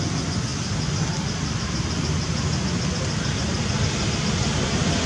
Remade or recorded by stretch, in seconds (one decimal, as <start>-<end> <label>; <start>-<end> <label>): 0.0-5.1 recorded